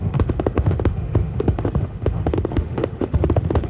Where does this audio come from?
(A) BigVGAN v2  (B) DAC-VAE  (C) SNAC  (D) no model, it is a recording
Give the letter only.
B